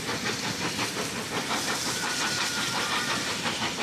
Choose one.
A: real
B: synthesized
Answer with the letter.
B